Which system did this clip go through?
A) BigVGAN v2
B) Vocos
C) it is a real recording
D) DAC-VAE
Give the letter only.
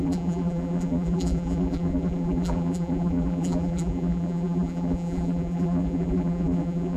A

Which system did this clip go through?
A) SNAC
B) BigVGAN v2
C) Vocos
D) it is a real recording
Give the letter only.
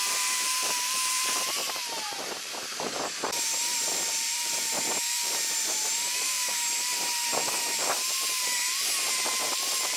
B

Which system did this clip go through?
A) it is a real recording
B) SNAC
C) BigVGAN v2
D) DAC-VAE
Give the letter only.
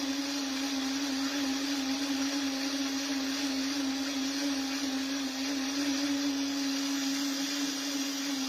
A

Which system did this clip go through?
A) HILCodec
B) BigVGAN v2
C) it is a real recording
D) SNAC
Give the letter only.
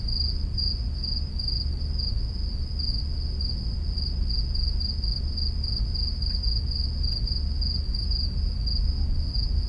C